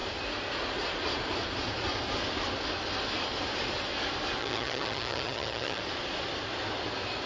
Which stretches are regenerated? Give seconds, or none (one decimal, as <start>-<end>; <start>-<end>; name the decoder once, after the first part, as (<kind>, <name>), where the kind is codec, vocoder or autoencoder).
4.4-5.8 (vocoder, HiFi-GAN)